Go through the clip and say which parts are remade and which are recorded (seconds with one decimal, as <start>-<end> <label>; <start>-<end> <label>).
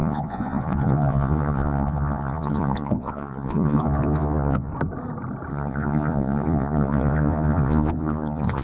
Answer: 0.0-4.7 remade; 4.7-5.5 recorded; 5.5-8.6 remade